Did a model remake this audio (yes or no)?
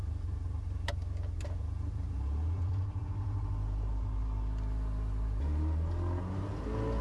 no